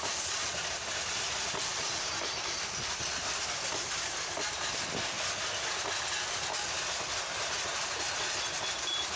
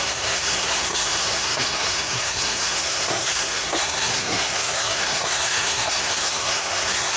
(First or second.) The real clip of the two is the first